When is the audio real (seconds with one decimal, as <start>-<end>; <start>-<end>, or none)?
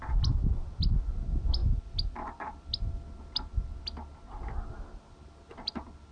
0.0-6.1